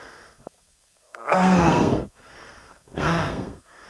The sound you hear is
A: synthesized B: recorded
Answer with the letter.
A